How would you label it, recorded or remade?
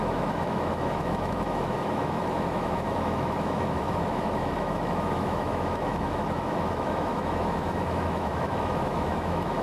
remade